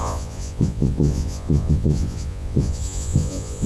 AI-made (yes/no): yes